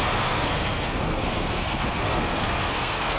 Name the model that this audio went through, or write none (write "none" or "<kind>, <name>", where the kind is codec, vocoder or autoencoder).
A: codec, SNAC